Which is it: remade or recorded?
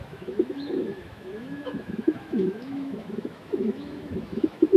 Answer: remade